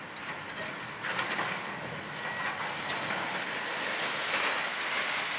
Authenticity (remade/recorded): recorded